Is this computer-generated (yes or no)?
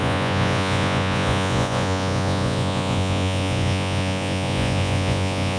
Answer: yes